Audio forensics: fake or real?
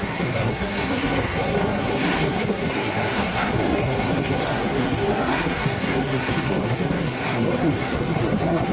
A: fake